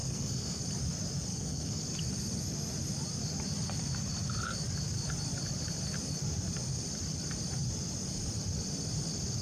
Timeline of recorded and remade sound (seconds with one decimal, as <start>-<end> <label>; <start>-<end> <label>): 0.0-0.6 remade; 0.6-1.3 recorded; 1.3-1.8 remade; 1.8-9.4 recorded